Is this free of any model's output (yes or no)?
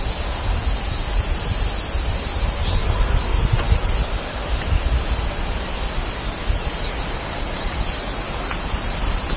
yes